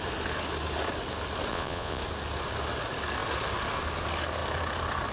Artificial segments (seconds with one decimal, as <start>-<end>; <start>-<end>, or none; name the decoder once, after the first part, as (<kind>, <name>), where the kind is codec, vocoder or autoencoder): 1.5-2.0 (vocoder, Vocos)